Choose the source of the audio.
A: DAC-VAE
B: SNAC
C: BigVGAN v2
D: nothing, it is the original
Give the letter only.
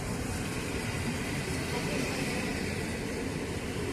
C